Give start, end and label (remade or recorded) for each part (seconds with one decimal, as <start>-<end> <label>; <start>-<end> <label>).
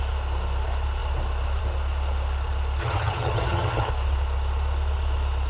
0.0-2.8 recorded; 2.8-3.9 remade; 3.9-5.5 recorded